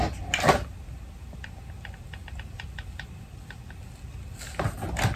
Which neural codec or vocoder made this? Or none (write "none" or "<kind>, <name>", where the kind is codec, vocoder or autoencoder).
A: none